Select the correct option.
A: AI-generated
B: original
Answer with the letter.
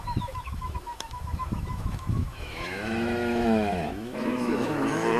A